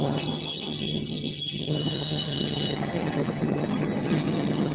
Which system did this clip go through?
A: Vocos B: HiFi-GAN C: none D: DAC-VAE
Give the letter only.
B